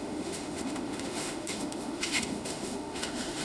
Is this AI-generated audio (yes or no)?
yes